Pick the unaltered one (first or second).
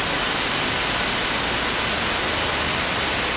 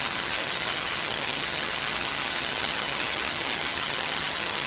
first